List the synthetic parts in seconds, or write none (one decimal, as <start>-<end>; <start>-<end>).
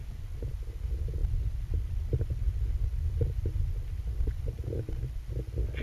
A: 1.2-2.2